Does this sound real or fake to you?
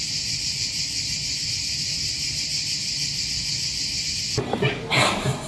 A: real